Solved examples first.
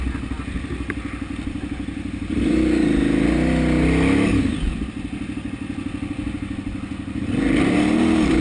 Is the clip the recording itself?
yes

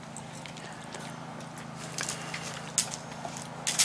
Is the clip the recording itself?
yes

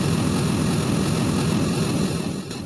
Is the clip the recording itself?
yes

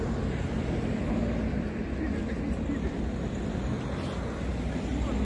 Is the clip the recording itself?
yes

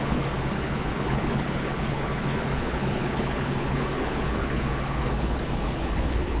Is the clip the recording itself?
no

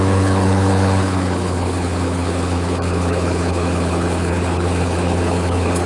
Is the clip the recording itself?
no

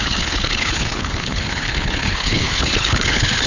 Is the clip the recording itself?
no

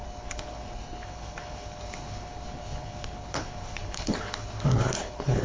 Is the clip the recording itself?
no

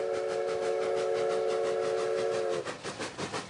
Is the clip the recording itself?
yes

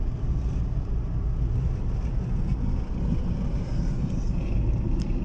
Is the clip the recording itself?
yes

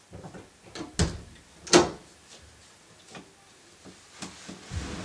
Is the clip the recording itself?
yes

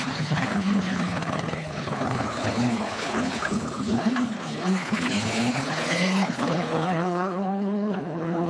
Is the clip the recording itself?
no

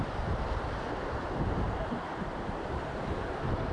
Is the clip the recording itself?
yes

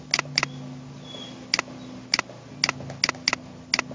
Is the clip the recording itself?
yes